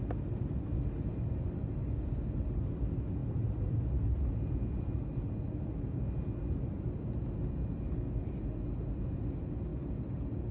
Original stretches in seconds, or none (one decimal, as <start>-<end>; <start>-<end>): 0.0-3.2; 3.9-10.5